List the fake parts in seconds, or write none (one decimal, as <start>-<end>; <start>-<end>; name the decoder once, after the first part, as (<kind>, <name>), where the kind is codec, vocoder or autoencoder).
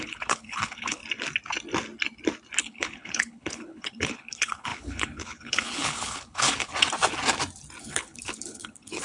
0.0-1.0 (codec, HILCodec); 2.6-6.7; 7.8-9.0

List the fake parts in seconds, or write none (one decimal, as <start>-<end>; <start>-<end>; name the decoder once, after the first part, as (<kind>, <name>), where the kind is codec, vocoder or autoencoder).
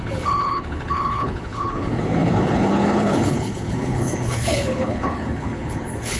0.0-6.2 (codec, HILCodec)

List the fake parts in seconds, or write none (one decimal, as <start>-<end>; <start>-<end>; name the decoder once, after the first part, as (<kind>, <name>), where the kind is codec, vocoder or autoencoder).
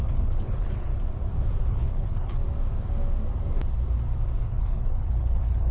0.0-0.9 (codec, HILCodec); 1.6-2.4; 4.4-5.7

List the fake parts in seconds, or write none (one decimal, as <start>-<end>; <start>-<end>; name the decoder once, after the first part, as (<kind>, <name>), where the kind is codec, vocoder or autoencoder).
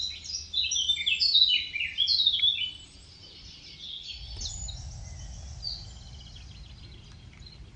none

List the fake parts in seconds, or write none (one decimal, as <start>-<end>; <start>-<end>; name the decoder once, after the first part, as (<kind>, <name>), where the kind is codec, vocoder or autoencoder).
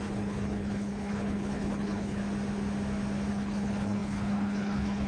0.0-2.2 (codec, HILCodec); 3.3-5.1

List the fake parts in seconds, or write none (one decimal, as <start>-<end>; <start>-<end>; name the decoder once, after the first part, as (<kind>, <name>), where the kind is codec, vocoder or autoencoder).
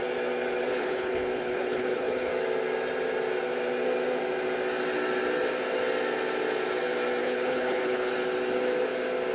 0.7-2.3 (codec, HILCodec); 7.2-8.1